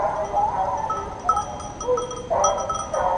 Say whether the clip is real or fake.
real